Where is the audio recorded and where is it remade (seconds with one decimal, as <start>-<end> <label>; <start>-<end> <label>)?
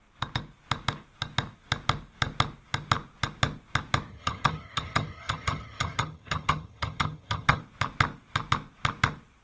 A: 0.0-4.1 recorded; 4.1-7.6 remade; 7.6-9.4 recorded